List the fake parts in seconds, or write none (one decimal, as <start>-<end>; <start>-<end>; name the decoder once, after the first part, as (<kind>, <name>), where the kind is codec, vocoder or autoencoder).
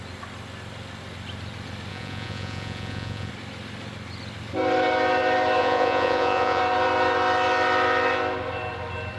1.9-3.3 (vocoder, Vocos); 5.6-6.6